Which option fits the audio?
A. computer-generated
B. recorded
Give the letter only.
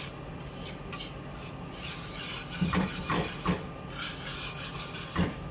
B